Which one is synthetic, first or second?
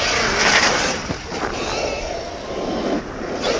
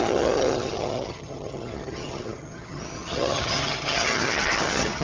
second